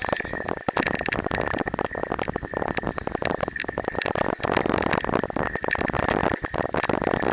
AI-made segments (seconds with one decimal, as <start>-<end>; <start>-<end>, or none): none